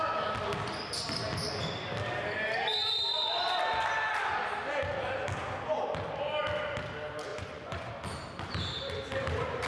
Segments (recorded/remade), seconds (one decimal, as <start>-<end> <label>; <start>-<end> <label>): 0.0-7.3 recorded; 7.3-7.9 remade; 7.9-9.7 recorded